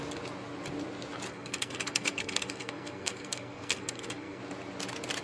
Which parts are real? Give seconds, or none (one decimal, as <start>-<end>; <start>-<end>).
0.0-1.3; 4.4-5.2